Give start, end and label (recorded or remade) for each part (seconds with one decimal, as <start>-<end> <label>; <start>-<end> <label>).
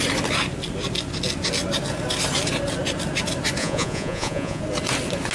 0.0-3.6 recorded; 3.6-4.6 remade; 4.6-5.3 recorded